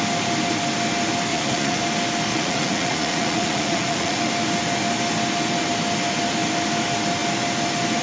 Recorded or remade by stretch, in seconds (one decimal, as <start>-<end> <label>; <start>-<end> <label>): 0.0-1.3 recorded; 1.3-1.8 remade; 1.8-2.3 recorded; 2.3-4.2 remade; 4.2-8.0 recorded